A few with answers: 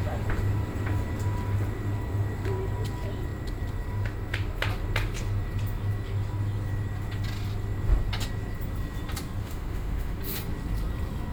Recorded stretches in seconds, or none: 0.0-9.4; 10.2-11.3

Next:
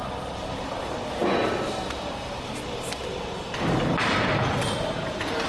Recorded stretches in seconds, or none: 0.0-5.5

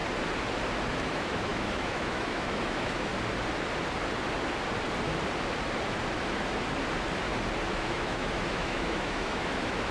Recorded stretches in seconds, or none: 0.0-0.9; 3.1-7.7

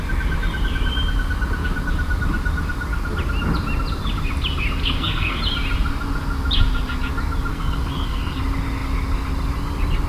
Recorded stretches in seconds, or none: 0.0-4.8; 5.4-7.5; 8.4-10.1